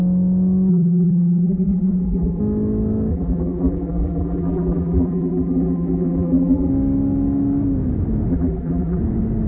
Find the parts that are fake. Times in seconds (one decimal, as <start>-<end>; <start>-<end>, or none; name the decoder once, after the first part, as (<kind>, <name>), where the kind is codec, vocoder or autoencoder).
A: 0.7-2.4 (vocoder, BigVGAN v2); 3.1-6.7; 8.3-9.0